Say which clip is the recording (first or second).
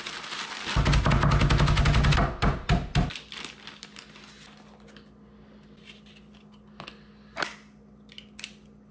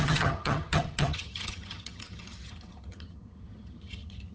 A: first